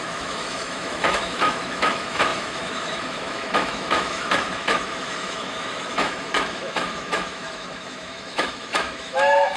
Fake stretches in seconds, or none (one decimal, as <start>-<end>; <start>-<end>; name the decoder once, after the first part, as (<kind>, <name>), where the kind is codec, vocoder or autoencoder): 0.0-9.6 (autoencoder, DAC-VAE)

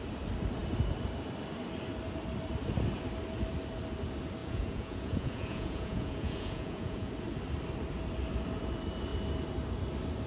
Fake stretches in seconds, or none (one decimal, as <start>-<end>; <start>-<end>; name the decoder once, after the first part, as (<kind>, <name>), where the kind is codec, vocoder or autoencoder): 4.4-7.1 (vocoder, Vocos)

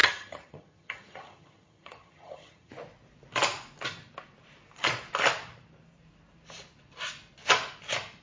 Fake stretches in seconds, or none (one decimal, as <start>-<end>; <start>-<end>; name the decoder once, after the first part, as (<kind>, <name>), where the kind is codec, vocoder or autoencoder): 0.0-2.7 (vocoder, HiFi-GAN)

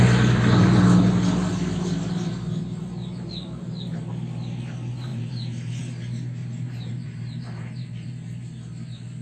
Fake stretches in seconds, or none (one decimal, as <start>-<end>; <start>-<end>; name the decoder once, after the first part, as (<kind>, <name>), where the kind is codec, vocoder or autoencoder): 5.1-5.8 (vocoder, BigVGAN v2); 6.4-8.1